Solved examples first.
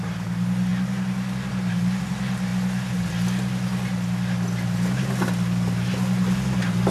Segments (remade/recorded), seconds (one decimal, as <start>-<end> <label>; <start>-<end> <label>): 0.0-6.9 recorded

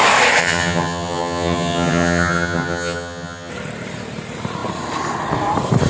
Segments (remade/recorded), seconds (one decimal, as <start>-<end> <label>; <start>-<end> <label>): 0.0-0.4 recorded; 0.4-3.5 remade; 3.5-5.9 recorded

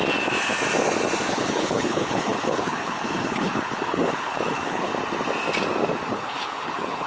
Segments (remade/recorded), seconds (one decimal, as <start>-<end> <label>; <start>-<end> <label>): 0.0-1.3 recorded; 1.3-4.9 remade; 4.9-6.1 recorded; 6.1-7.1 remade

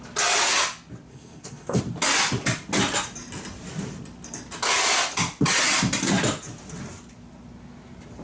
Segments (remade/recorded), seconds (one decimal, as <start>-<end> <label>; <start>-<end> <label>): 0.0-1.1 recorded; 1.1-1.8 remade; 1.8-8.2 recorded

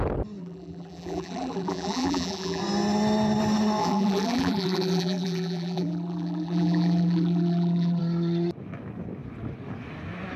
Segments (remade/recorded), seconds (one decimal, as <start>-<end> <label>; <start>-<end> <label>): 0.0-0.4 recorded; 0.4-2.6 remade; 2.6-3.8 recorded; 3.8-8.0 remade; 8.0-10.4 recorded

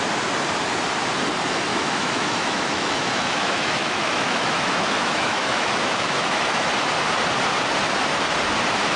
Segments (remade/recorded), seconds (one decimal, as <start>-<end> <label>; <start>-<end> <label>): 0.0-1.7 recorded; 1.7-6.7 remade; 6.7-9.0 recorded

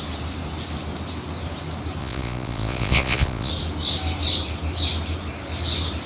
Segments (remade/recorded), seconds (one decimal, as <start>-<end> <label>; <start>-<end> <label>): 0.0-2.0 recorded; 2.0-3.5 remade; 3.5-6.1 recorded

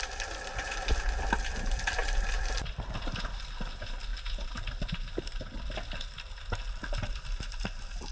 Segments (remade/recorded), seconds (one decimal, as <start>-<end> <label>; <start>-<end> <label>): 0.0-2.0 recorded; 2.0-3.4 remade; 3.4-8.1 recorded